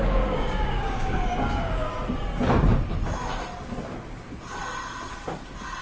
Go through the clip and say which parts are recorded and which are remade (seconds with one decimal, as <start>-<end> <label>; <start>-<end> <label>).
0.0-1.9 remade; 1.9-5.8 recorded